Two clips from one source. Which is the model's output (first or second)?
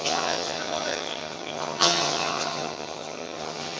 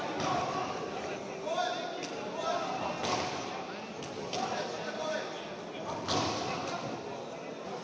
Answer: first